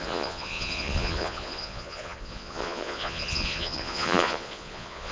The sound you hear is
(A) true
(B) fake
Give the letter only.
B